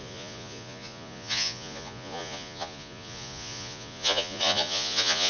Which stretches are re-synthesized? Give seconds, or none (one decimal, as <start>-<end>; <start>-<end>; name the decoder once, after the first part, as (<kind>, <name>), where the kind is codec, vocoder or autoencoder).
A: 0.0-5.3 (vocoder, Vocos)